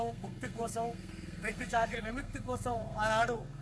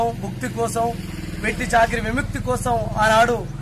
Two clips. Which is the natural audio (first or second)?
second